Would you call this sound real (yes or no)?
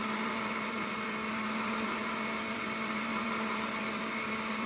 no